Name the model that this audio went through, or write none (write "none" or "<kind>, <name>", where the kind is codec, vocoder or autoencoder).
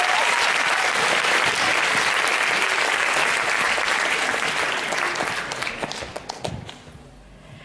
none